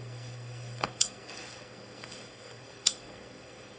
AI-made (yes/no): yes